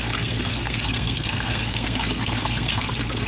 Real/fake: fake